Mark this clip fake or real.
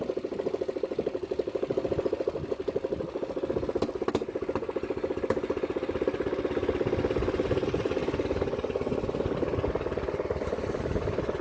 real